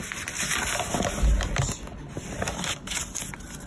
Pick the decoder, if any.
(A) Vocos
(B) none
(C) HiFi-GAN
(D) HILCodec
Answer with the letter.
B